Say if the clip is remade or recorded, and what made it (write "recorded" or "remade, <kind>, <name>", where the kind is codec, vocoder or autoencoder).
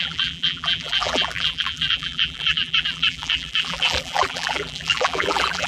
remade, vocoder, BigVGAN v2